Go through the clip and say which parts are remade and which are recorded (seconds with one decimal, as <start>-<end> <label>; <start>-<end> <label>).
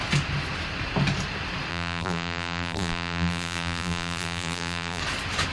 0.0-1.7 recorded; 1.7-5.0 remade; 5.0-5.5 recorded